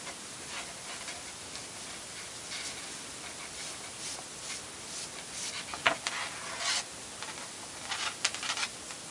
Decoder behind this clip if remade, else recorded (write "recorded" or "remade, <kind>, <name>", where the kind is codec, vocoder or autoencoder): recorded